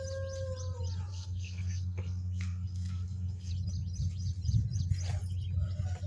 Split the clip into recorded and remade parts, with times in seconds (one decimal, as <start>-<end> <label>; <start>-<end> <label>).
0.0-1.1 recorded; 1.1-3.5 remade; 3.5-6.1 recorded